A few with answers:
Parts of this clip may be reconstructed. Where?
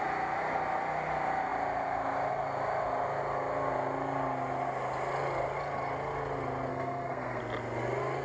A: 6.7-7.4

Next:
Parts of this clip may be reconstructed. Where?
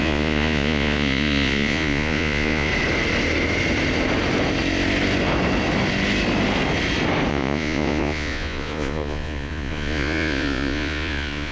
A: 0.0-2.7; 7.3-11.5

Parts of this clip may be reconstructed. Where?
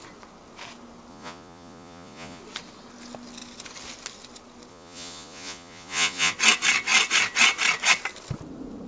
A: 1.1-2.4; 4.7-6.3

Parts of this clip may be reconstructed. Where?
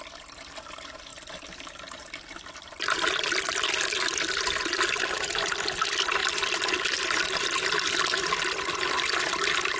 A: none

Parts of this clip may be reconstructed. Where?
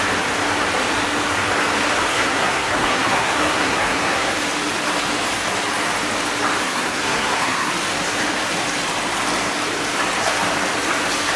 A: 2.1-4.3; 6.6-7.7